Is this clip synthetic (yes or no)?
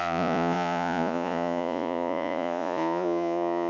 yes